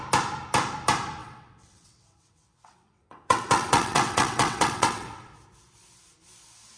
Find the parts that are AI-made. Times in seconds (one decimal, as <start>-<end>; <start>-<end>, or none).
1.2-5.3

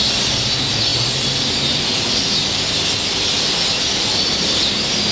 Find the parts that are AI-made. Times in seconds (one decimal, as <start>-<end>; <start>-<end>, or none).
none

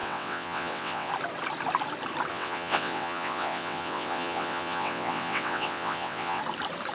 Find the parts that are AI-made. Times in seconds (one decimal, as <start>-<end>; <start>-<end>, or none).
0.0-1.1; 2.3-6.4

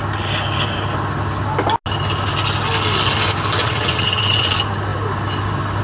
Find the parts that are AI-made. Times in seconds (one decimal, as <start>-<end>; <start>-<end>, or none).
3.6-4.5

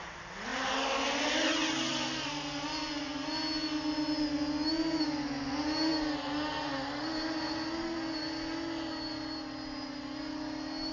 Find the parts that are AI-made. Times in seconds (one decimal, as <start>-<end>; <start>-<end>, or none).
none